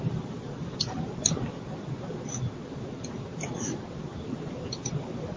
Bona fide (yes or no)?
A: yes